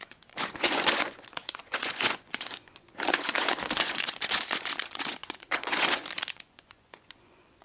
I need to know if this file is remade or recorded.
remade